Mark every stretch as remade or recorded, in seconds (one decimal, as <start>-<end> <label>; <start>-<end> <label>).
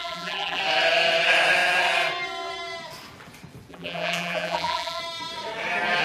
0.0-0.6 remade; 0.6-3.7 recorded; 3.7-5.0 remade; 5.0-6.0 recorded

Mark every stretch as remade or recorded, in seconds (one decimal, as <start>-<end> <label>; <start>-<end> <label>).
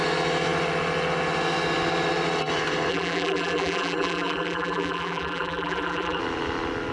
0.0-2.9 recorded; 2.9-6.2 remade; 6.2-6.9 recorded